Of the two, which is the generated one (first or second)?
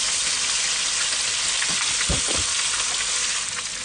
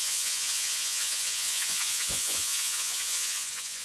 second